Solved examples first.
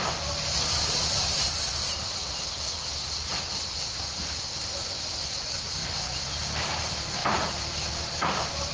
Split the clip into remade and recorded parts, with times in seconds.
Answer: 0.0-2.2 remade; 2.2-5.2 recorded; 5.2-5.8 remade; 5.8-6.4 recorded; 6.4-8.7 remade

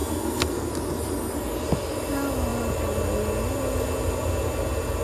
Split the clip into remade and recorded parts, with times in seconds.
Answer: 0.0-0.7 remade; 0.7-5.0 recorded

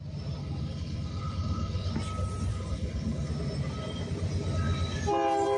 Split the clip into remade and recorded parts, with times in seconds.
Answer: 0.0-0.4 recorded; 0.4-1.9 remade; 1.9-2.5 recorded; 2.5-3.3 remade; 3.3-5.6 recorded

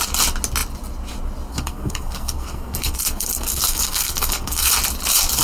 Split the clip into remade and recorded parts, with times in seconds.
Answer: 0.0-1.5 recorded; 1.5-4.7 remade; 4.7-5.4 recorded

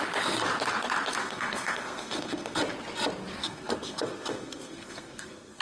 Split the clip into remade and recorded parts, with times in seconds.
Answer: 0.0-1.2 recorded; 1.2-2.6 remade; 2.6-3.4 recorded; 3.4-5.6 remade

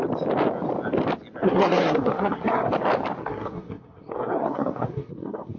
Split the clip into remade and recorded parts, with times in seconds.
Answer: 0.0-1.4 recorded; 1.4-2.7 remade; 2.7-3.2 recorded; 3.2-5.6 remade

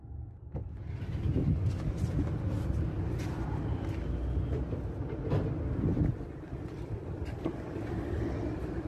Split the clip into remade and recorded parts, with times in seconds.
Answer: 0.0-8.9 recorded